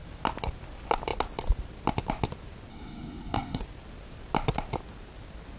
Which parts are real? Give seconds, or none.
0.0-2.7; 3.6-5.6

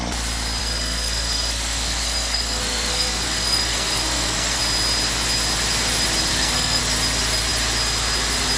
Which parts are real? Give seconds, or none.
0.0-0.6; 4.6-6.3; 6.8-8.6

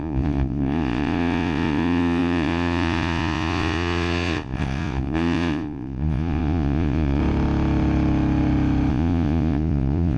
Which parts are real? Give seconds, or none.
7.2-8.9